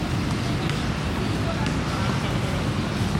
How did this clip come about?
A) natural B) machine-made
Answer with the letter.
A